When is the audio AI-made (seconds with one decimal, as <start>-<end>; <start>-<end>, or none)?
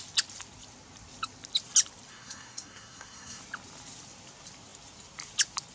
2.1-3.4